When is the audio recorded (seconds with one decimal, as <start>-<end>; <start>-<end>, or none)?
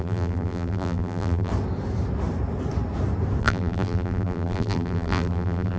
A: 1.5-3.4